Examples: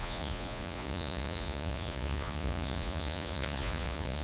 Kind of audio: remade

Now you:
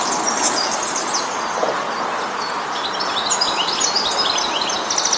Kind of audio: recorded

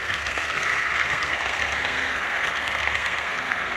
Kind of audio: remade